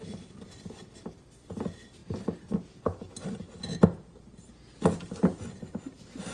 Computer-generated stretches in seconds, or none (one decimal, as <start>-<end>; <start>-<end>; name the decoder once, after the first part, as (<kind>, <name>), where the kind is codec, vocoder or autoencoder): none

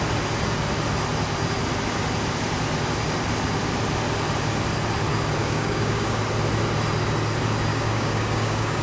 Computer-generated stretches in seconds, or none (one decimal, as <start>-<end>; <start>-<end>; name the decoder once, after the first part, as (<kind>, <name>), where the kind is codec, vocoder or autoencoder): 5.4-6.2 (codec, DAC); 7.7-8.8